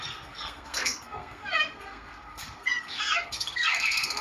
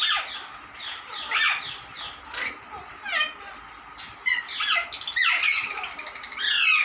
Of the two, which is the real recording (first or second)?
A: second